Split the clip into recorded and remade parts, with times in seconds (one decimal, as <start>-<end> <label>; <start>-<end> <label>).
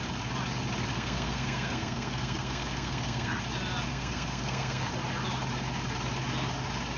0.0-0.9 recorded; 0.9-3.4 remade; 3.4-3.9 recorded; 3.9-4.9 remade; 4.9-7.0 recorded